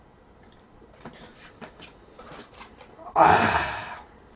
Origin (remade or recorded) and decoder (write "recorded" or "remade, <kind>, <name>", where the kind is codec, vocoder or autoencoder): remade, vocoder, BigVGAN v2